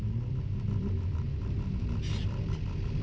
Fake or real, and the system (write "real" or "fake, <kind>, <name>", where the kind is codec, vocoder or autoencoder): real